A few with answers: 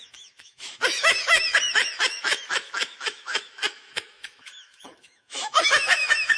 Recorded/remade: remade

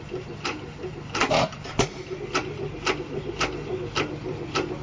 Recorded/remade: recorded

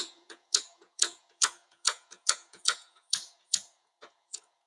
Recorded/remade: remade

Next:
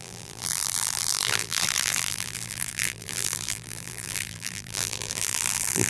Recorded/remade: remade